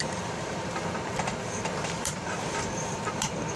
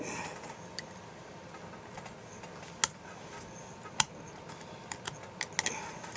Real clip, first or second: second